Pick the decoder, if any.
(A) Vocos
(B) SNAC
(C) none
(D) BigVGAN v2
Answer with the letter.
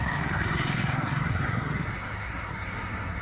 B